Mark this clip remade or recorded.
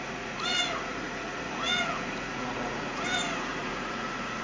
remade